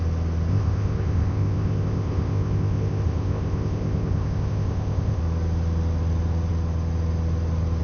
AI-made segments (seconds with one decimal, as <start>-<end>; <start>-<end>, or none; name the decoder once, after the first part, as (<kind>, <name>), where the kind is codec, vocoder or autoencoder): 0.5-5.2 (codec, ZipCodec)